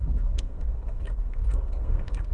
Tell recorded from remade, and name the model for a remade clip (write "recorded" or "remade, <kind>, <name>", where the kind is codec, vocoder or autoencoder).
remade, codec, SNAC